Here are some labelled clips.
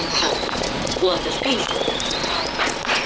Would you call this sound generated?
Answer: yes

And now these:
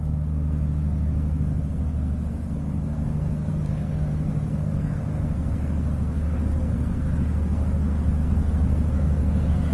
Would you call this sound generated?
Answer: yes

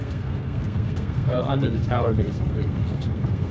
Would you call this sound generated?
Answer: yes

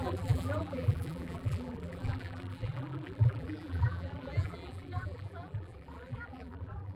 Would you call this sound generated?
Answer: yes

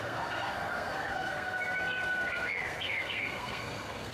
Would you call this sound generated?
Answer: yes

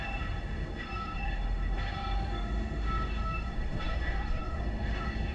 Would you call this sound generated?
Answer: yes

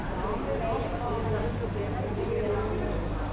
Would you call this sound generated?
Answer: no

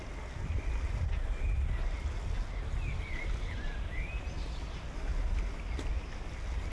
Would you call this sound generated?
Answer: no